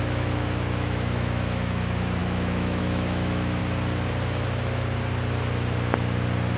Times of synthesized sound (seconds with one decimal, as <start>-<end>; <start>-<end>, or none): 0.0-3.6